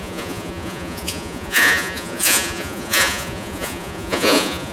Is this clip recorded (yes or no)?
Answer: no